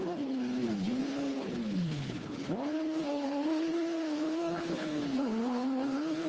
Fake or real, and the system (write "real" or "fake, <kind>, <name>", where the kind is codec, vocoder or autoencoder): fake, codec, HILCodec